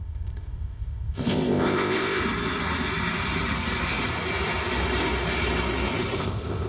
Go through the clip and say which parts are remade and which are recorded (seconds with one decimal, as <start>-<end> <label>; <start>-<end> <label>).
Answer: 0.0-2.2 remade; 2.2-6.2 recorded; 6.2-6.7 remade